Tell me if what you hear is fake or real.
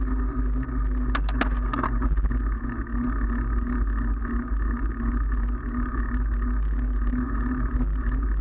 real